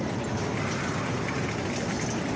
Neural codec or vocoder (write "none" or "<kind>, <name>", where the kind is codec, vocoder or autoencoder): none